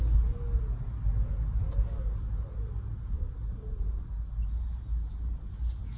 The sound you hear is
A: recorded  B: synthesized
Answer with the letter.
A